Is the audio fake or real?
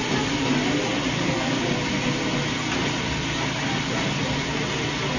real